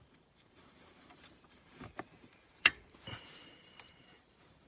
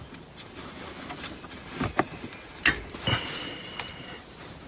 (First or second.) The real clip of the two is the second